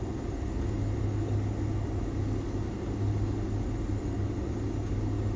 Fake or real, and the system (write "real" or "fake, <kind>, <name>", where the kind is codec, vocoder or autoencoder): real